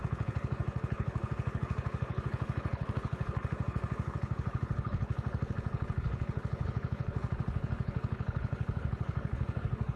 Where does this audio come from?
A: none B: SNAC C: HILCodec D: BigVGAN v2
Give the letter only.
C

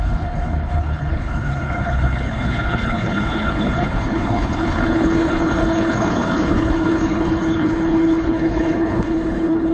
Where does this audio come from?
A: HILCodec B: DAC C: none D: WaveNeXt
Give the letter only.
A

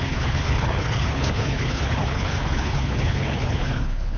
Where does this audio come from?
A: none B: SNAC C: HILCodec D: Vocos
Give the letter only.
C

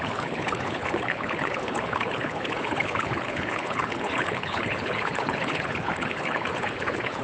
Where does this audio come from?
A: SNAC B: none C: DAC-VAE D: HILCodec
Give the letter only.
D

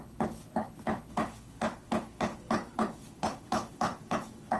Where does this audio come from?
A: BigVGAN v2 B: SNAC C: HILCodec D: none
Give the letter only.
C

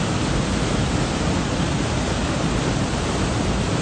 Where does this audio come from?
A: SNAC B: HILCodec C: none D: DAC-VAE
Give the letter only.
C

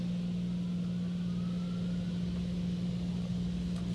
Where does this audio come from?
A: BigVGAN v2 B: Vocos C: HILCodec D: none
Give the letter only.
D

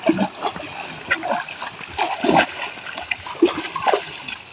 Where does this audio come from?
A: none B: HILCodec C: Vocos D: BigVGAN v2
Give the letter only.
A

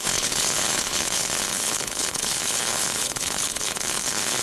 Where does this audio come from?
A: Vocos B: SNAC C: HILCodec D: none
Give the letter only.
C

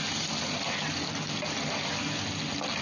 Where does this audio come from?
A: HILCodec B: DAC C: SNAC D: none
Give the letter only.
D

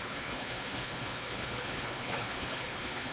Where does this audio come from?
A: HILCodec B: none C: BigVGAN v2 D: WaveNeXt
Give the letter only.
A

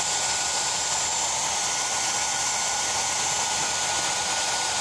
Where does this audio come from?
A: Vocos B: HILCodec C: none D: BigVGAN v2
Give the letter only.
C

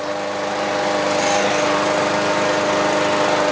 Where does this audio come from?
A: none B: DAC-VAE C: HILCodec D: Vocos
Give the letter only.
A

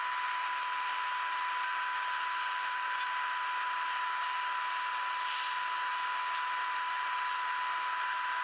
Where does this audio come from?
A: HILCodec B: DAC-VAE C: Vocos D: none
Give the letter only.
D